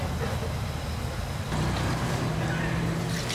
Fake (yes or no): no